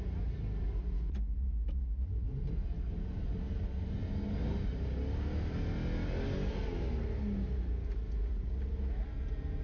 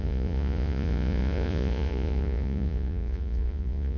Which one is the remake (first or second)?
second